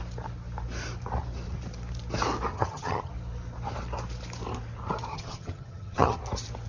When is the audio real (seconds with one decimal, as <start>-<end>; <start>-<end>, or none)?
0.0-2.5; 3.1-5.1; 6.2-6.7